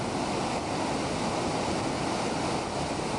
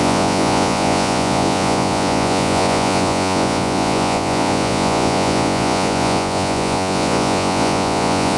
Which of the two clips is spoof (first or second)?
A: second